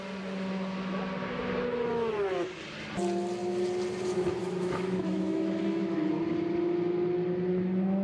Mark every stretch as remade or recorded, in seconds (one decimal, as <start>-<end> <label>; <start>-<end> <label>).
0.0-4.4 recorded; 4.4-6.1 remade; 6.1-8.0 recorded